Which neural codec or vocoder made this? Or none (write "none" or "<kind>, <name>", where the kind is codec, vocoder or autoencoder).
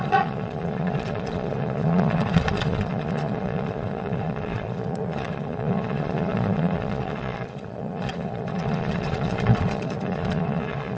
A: vocoder, Vocos